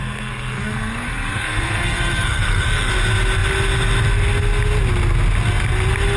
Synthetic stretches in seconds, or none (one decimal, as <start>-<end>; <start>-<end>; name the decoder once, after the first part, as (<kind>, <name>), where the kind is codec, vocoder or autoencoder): 0.0-2.9 (codec, SNAC)